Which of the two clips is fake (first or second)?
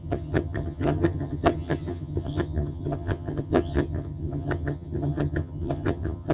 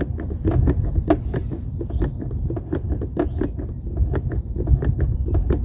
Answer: first